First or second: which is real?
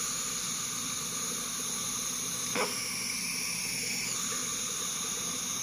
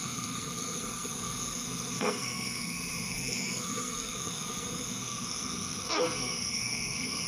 first